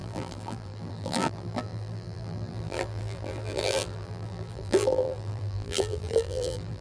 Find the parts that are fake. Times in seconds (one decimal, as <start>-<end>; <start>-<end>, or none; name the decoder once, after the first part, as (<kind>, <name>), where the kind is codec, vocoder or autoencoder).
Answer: 0.0-6.8 (vocoder, BigVGAN v2)